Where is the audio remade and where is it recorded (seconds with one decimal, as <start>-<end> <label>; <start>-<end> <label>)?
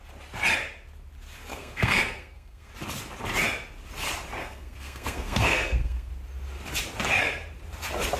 0.0-1.5 recorded; 1.5-2.7 remade; 2.7-4.4 recorded; 4.4-6.1 remade; 6.1-8.2 recorded